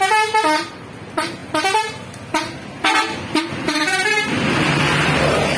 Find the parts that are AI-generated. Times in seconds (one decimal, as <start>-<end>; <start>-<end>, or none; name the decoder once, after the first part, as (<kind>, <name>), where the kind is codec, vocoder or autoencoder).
none